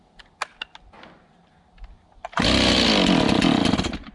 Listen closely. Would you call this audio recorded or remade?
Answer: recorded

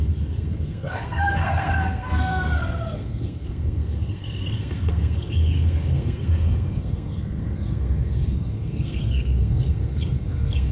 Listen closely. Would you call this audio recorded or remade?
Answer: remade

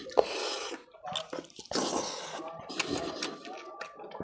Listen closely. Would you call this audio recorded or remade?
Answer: recorded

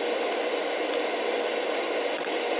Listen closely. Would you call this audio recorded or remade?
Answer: recorded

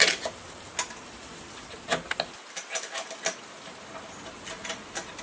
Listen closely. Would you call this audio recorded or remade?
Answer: recorded